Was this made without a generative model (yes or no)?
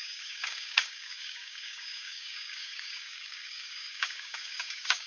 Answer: no